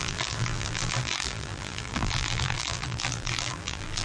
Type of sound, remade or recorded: remade